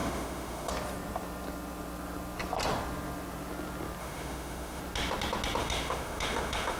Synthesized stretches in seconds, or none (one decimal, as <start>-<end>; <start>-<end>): 0.0-0.7; 4.0-4.8; 5.6-6.8